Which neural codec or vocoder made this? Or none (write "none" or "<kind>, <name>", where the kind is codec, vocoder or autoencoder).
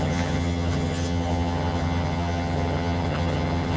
vocoder, HiFi-GAN